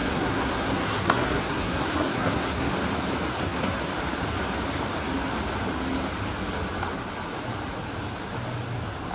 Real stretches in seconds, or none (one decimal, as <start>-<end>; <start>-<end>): 2.7-3.3; 3.8-9.1